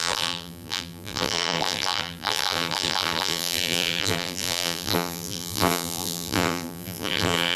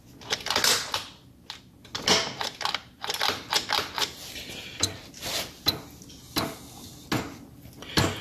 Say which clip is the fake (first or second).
first